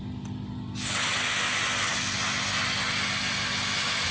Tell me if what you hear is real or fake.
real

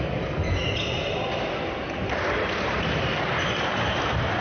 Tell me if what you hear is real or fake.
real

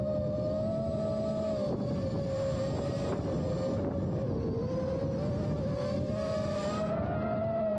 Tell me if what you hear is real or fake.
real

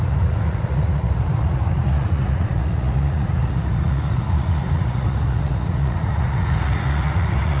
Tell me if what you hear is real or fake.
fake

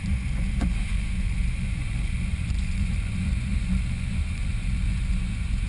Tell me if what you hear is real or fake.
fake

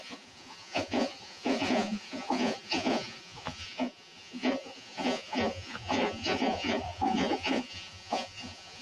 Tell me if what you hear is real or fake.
fake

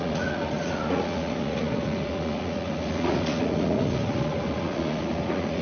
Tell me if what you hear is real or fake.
fake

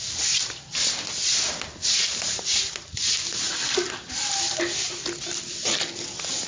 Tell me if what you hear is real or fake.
real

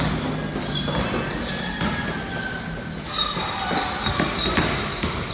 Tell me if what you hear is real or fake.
real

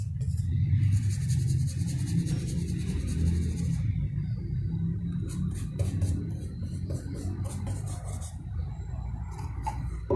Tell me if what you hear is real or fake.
real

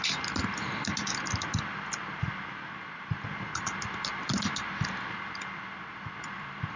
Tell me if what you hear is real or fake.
real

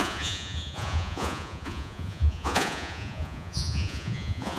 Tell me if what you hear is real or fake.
fake